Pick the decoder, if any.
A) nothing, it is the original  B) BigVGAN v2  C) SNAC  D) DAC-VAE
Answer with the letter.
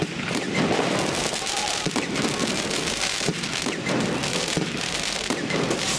A